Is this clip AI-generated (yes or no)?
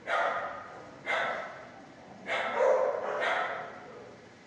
no